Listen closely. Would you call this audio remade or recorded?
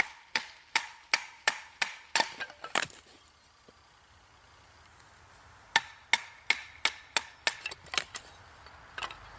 recorded